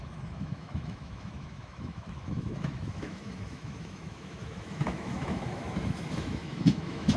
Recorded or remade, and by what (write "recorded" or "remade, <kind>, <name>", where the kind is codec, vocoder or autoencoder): remade, autoencoder, DAC-VAE